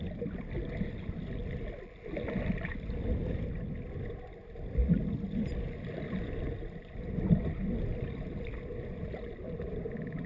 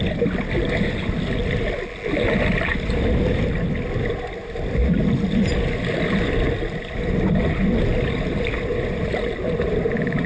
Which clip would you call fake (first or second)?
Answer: first